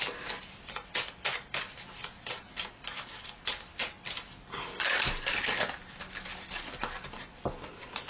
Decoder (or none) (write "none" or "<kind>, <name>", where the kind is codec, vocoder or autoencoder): none